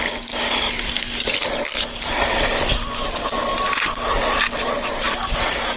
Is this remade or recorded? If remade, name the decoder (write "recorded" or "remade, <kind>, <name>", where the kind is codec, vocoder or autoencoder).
recorded